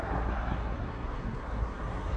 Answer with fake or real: fake